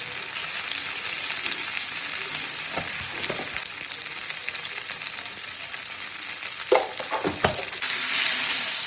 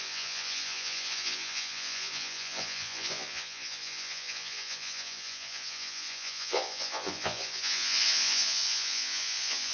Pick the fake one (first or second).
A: second